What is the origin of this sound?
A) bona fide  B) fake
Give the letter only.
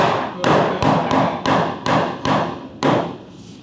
A